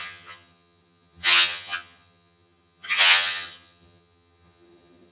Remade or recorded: remade